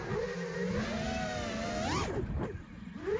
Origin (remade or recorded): recorded